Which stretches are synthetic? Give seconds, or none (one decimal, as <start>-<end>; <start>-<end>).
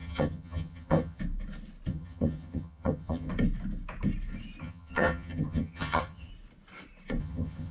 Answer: 0.0-1.2; 1.9-3.3; 4.6-6.3; 7.2-7.7